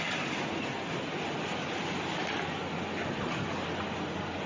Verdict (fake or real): real